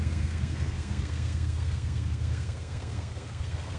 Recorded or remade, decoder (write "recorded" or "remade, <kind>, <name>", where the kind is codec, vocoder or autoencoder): remade, codec, SNAC